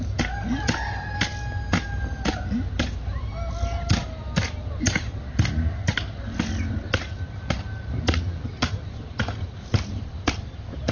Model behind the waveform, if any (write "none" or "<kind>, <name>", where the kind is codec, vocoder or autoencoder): none